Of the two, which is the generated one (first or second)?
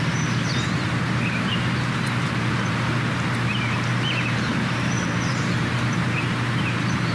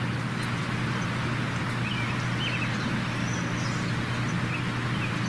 first